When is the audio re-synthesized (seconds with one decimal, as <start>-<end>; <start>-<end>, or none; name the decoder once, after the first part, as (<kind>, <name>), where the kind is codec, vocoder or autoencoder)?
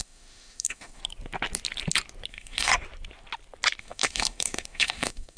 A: 0.0-1.0 (autoencoder, DAC-VAE); 2.3-2.7; 3.8-5.4